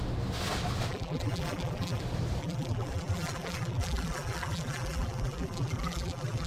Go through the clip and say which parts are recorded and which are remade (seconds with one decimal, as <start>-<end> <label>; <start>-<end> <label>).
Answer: 0.0-0.9 recorded; 0.9-2.0 remade; 2.0-2.4 recorded; 2.4-6.5 remade